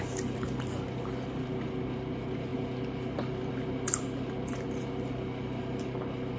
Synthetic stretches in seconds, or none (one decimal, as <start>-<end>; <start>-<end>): none